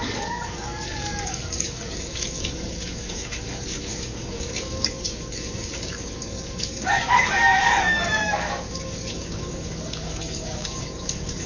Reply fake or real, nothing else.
fake